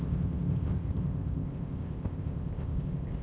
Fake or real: fake